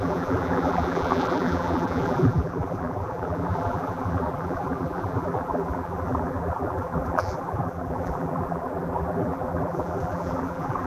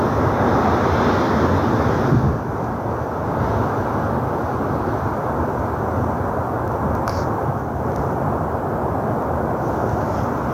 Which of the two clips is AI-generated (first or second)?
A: first